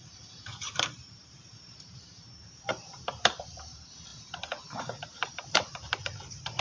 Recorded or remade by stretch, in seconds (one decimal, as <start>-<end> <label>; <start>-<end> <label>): 0.0-6.6 remade